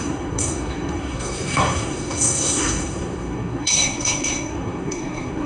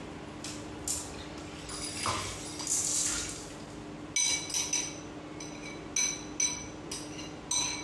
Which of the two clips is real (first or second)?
second